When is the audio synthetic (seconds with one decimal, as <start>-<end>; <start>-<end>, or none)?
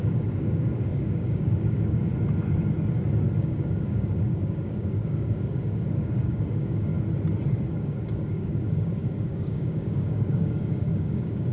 0.0-2.1; 3.4-6.9; 7.7-11.5